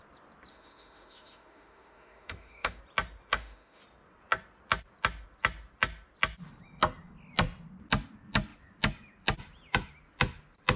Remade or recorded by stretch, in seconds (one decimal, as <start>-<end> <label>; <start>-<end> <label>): 0.0-0.5 recorded; 0.5-2.8 remade; 2.8-3.3 recorded; 3.3-3.8 remade; 3.8-10.8 recorded